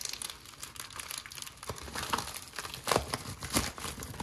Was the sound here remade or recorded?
recorded